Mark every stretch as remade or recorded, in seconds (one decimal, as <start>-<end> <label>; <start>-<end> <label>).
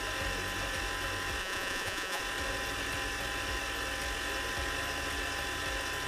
0.0-1.4 recorded; 1.4-2.2 remade; 2.2-6.1 recorded